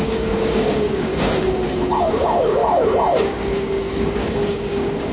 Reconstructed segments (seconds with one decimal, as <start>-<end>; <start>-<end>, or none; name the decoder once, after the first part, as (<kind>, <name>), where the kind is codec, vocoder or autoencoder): 0.0-1.1 (codec, DAC); 2.1-2.6; 3.2-5.1